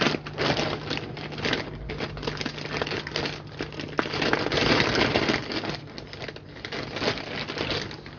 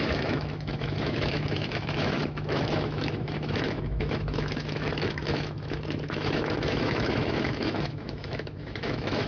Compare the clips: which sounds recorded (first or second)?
first